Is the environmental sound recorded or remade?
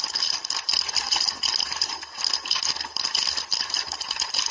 recorded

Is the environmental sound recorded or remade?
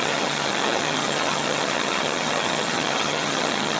remade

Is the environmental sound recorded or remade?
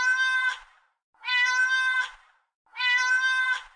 recorded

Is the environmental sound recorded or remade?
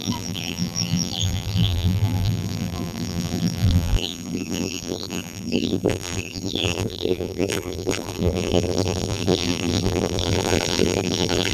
remade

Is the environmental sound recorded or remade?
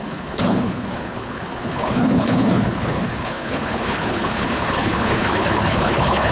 remade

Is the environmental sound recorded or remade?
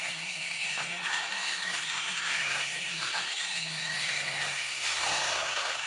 remade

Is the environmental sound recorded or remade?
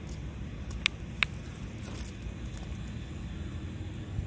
recorded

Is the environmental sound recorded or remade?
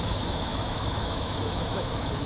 remade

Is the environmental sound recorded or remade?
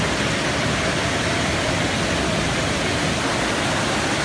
recorded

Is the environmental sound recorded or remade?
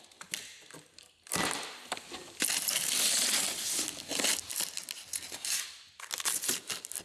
recorded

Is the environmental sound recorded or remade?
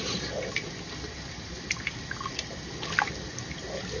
recorded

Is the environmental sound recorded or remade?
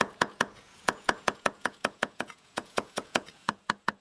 remade